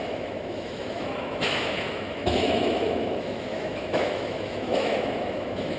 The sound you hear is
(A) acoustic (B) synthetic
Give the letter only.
B